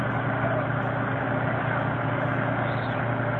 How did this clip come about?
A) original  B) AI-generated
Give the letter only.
A